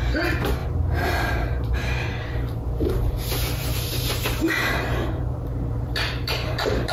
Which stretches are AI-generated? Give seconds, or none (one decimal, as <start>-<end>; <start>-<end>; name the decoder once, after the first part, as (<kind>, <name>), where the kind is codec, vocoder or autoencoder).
0.0-6.9 (vocoder, BigVGAN v2)